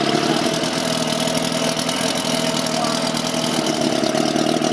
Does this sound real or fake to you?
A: real